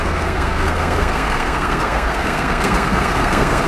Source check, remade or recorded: remade